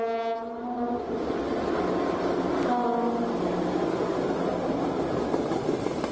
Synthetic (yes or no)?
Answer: no